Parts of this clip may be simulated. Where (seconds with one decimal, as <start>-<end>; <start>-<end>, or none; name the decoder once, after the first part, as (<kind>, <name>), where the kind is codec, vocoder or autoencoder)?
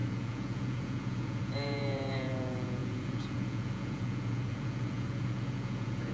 0.0-6.1 (vocoder, Vocos)